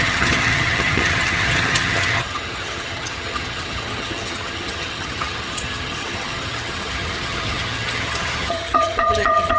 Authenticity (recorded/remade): remade